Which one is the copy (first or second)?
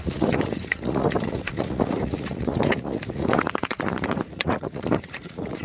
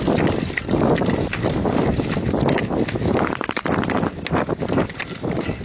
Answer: first